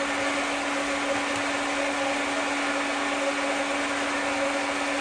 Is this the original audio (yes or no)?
yes